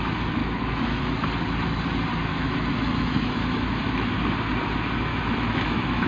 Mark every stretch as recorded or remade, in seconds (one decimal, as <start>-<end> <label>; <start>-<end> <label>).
0.0-0.4 recorded; 0.4-1.0 remade; 1.0-2.3 recorded; 2.3-4.1 remade; 4.1-5.1 recorded; 5.1-6.1 remade